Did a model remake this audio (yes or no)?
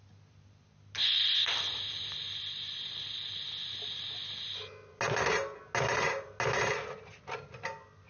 no